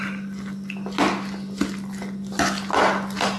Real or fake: real